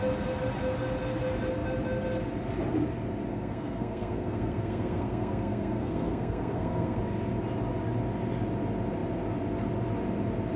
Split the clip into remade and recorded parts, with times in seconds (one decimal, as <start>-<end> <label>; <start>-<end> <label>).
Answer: 0.0-3.3 recorded; 3.3-7.0 remade; 7.0-10.6 recorded